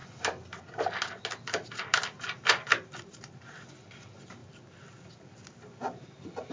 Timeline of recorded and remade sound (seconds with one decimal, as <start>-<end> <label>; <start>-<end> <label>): 0.0-4.4 recorded; 4.4-5.1 remade; 5.1-6.5 recorded